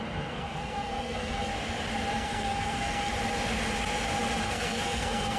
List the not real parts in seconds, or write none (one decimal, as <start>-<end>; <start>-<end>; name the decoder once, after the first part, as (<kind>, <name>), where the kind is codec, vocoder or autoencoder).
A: 0.0-1.5 (codec, SNAC); 2.1-3.1; 4.4-5.4